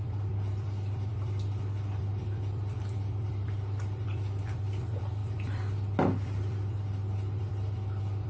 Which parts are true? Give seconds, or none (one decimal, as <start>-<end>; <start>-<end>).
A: none